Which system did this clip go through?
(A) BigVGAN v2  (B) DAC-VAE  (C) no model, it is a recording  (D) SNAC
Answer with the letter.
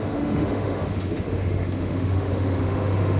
B